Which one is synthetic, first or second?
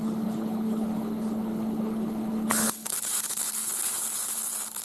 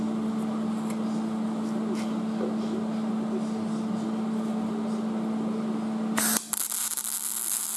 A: first